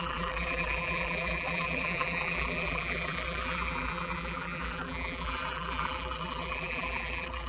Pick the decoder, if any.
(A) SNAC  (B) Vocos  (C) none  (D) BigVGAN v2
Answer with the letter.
D